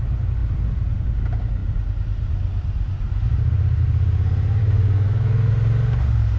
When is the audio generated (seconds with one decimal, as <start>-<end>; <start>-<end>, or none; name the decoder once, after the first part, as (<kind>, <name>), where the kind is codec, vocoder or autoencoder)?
4.6-5.5 (codec, SNAC)